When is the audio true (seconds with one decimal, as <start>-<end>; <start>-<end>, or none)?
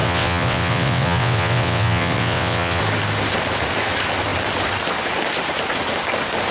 2.8-6.5